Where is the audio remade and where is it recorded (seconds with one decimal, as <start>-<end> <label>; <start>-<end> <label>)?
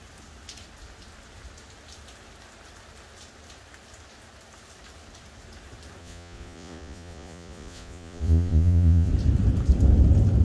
0.0-6.0 recorded; 6.0-9.1 remade; 9.1-10.4 recorded